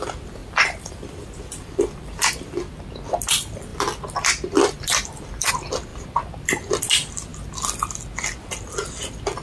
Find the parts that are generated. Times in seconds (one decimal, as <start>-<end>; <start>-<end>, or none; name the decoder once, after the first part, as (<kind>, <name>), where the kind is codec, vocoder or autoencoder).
0.4-2.8 (vocoder, BigVGAN v2); 3.7-5.5; 5.9-6.8